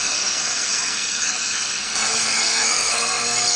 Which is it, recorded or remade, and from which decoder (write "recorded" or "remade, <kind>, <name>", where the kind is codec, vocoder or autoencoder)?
remade, codec, SNAC